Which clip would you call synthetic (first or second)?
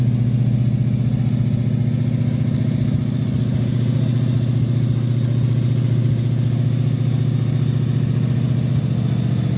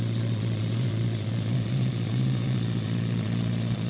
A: second